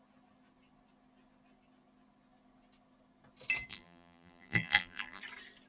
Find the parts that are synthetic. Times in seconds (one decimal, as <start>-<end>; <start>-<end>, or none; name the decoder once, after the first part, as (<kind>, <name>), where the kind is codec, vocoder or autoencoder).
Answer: 3.7-5.2 (vocoder, BigVGAN v2)